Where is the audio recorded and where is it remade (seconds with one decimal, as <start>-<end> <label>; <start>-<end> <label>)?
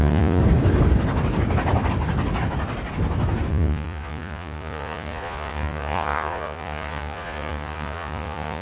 0.0-0.4 remade; 0.4-3.5 recorded; 3.5-8.6 remade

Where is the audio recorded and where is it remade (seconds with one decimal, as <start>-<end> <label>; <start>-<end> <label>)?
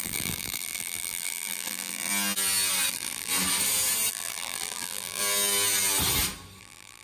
0.0-2.1 remade; 2.1-2.9 recorded; 2.9-3.3 remade; 3.3-4.1 recorded; 4.1-5.2 remade; 5.2-6.6 recorded; 6.6-7.0 remade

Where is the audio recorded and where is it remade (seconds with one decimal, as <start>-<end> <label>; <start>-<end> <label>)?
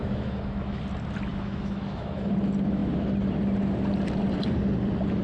0.0-0.8 remade; 0.8-1.3 recorded; 1.3-2.3 remade; 2.3-5.2 recorded